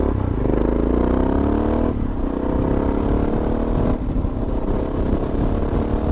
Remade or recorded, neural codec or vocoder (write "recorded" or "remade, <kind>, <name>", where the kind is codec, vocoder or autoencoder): recorded